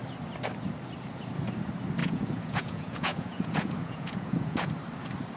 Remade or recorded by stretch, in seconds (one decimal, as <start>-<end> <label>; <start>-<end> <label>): 0.0-2.0 recorded; 2.0-4.7 remade; 4.7-5.4 recorded